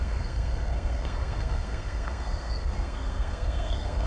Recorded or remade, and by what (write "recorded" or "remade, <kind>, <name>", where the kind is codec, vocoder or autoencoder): remade, codec, SNAC